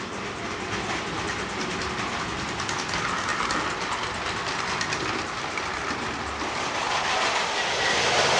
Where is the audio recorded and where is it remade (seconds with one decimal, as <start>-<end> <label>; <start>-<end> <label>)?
0.0-8.4 recorded